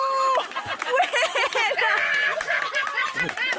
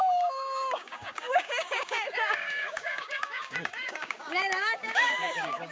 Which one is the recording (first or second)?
first